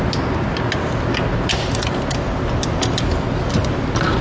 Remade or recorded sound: recorded